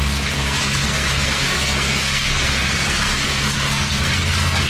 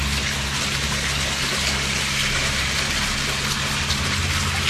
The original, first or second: second